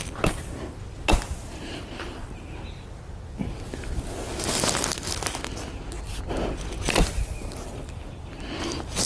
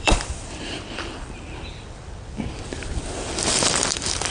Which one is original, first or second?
first